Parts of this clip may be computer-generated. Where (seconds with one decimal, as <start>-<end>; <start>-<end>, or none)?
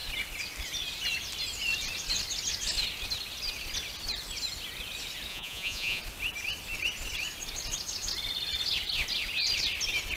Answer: 5.3-6.0